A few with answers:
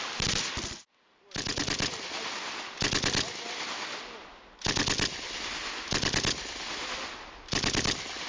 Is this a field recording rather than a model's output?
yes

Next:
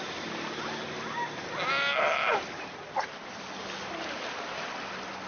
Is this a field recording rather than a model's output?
yes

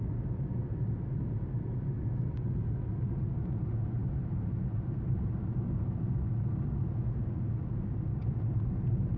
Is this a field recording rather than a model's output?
yes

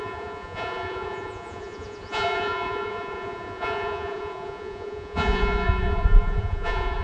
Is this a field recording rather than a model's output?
no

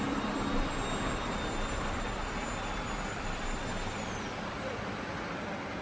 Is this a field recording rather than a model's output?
yes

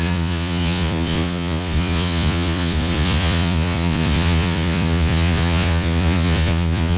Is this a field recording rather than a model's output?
no